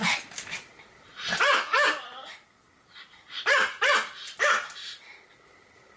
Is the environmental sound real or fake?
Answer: real